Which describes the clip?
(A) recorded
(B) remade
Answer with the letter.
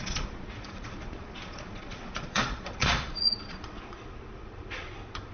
B